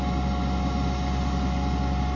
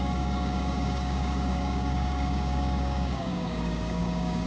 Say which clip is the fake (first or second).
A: second